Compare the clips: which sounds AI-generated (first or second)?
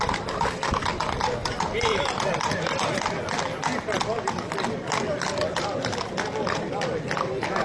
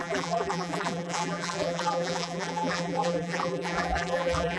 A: second